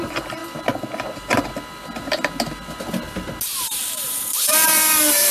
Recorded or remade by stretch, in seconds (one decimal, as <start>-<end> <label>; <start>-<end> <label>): 0.0-0.4 remade; 0.4-3.6 recorded; 3.6-5.3 remade